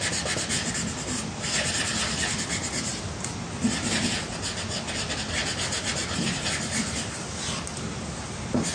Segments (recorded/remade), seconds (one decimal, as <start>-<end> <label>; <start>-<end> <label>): 0.0-8.7 recorded